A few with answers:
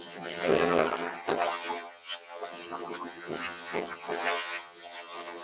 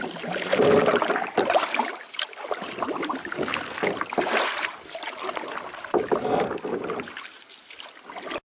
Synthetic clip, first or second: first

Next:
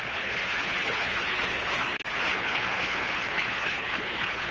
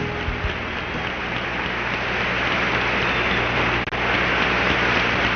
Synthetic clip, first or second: first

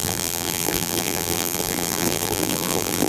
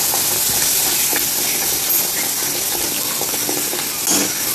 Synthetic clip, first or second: first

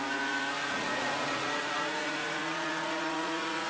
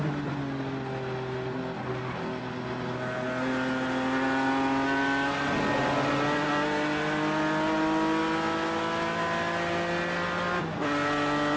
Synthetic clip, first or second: first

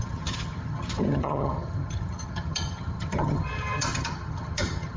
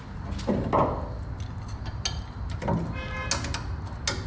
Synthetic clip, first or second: first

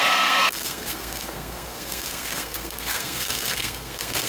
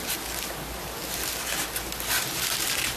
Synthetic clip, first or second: first